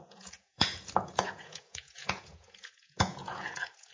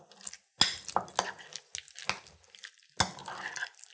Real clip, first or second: second